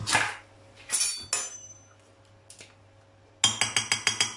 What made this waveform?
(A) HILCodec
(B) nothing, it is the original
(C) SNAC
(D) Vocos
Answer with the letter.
B